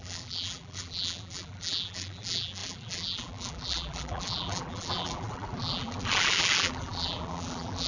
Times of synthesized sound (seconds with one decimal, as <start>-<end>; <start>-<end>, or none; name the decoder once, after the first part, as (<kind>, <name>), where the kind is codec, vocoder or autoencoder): 0.0-7.9 (vocoder, BigVGAN v2)